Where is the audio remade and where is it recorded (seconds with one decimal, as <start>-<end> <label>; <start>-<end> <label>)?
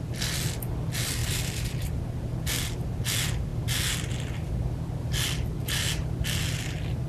0.0-1.2 recorded; 1.2-2.0 remade; 2.0-7.1 recorded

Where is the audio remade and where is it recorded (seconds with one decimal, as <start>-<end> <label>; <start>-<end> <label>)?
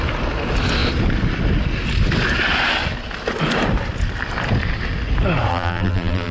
0.0-5.5 recorded; 5.5-6.3 remade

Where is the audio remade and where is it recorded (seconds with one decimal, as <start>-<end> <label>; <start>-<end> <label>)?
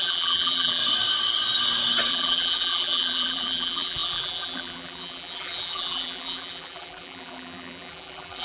0.0-0.8 remade; 0.8-2.1 recorded; 2.1-8.4 remade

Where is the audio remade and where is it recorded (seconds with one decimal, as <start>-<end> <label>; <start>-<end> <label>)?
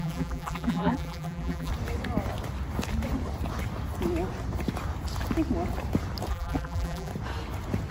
0.0-1.7 remade; 1.7-6.3 recorded; 6.3-7.1 remade; 7.1-7.9 recorded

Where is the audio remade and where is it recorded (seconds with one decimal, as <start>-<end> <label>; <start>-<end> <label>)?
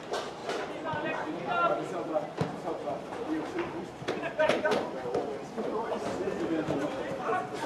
0.0-7.7 remade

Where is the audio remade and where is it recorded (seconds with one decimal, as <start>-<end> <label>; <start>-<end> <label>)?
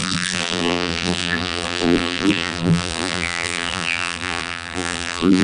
0.0-5.4 remade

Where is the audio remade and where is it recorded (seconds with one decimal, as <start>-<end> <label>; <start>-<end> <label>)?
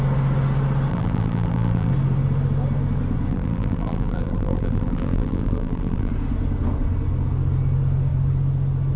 0.0-0.9 recorded; 0.9-1.9 remade; 1.9-3.3 recorded; 3.3-6.1 remade; 6.1-9.0 recorded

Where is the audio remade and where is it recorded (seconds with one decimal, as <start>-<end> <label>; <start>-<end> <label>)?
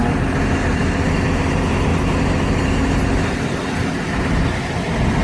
0.0-5.2 recorded